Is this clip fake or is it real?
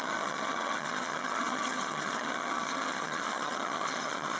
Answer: fake